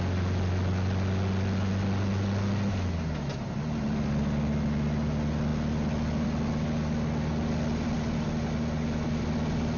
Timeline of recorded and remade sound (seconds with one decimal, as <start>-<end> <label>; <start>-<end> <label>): 0.0-9.8 recorded